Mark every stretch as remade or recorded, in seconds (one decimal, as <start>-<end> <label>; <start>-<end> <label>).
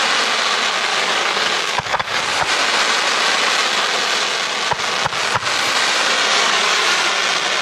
0.0-0.9 recorded; 0.9-2.5 remade; 2.5-6.3 recorded; 6.3-7.1 remade; 7.1-7.6 recorded